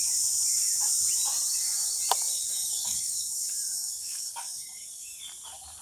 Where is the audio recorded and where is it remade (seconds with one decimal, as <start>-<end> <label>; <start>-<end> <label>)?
0.0-2.3 recorded; 2.3-5.2 remade; 5.2-5.8 recorded